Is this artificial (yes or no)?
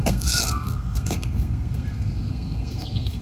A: yes